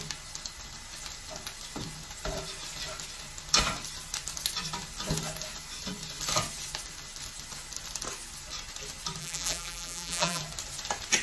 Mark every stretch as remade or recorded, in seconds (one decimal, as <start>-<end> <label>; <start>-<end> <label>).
0.0-9.2 recorded; 9.2-10.4 remade; 10.4-11.2 recorded